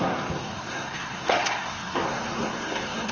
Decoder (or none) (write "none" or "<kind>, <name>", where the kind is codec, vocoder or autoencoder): codec, SNAC